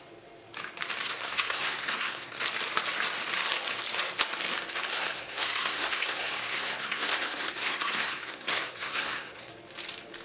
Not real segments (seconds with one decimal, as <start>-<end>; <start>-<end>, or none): 1.0-2.4; 4.9-9.5